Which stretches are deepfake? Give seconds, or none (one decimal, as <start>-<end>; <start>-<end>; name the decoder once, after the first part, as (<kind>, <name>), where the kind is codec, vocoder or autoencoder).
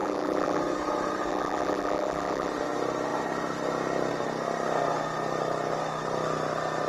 0.0-0.6 (vocoder, BigVGAN v2); 1.3-2.5